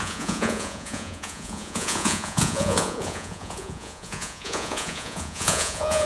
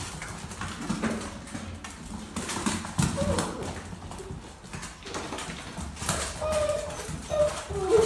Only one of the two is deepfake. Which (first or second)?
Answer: first